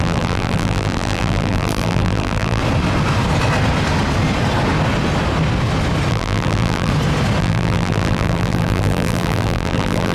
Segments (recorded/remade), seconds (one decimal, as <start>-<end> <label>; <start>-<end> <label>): 0.0-2.6 remade; 2.6-6.1 recorded; 6.1-6.9 remade; 6.9-7.4 recorded; 7.4-10.1 remade